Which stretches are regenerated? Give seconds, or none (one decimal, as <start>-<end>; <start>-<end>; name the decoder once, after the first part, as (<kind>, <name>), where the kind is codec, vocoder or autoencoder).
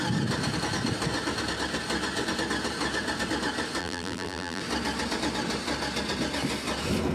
3.8-4.6 (vocoder, BigVGAN v2)